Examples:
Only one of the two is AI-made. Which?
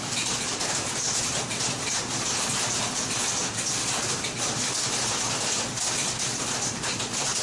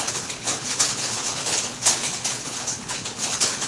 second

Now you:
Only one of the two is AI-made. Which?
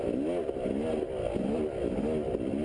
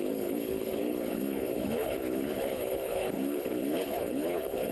second